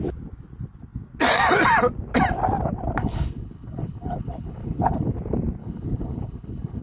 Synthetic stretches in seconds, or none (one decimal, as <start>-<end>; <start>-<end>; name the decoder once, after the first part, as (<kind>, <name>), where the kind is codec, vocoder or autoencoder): 3.0-5.1 (codec, HILCodec); 5.6-6.8